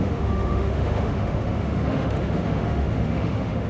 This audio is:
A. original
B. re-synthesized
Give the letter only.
B